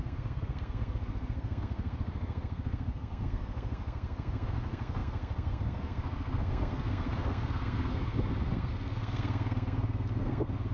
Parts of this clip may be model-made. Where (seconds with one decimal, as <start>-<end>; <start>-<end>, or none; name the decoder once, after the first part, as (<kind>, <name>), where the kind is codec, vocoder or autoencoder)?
0.0-10.7 (codec, SNAC)